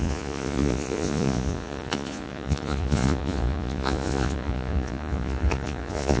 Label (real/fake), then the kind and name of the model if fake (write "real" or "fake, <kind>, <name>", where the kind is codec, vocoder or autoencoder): fake, vocoder, Vocos